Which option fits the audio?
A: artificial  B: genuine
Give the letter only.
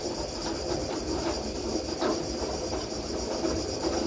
B